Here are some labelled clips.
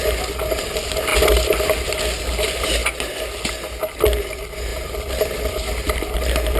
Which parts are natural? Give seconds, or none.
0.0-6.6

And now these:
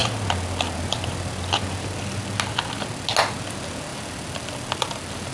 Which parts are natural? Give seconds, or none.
0.0-3.9

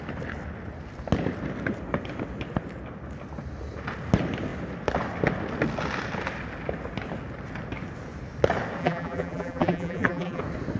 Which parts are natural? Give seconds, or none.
0.0-8.8; 10.4-10.8

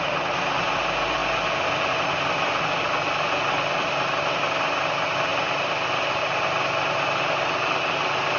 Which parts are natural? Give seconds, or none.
0.0-8.4

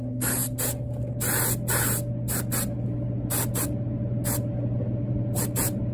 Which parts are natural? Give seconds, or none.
0.0-5.9